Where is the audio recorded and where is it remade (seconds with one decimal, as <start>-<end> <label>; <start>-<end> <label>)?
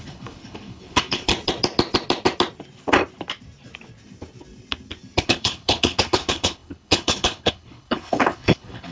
0.0-1.3 remade; 1.3-5.2 recorded; 5.2-8.9 remade